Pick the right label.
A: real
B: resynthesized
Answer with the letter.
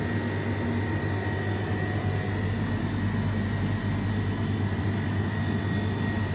A